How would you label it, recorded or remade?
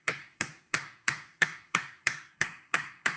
remade